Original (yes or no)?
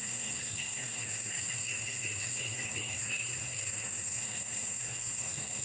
no